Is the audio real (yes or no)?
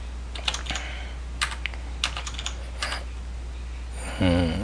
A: yes